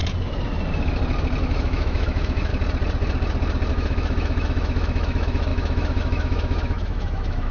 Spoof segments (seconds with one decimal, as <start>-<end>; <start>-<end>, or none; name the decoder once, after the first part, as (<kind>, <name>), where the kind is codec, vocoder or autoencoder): 1.4-2.5 (autoencoder, DAC-VAE); 3.7-7.5